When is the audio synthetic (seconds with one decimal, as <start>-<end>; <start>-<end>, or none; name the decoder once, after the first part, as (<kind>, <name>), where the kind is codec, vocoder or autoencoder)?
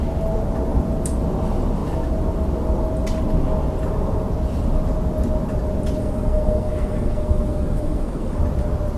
6.0-8.4 (codec, SNAC)